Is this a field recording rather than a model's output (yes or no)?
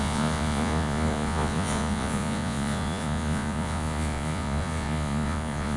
no